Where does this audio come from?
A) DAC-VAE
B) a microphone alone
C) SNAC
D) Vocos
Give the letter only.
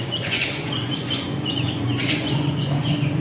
D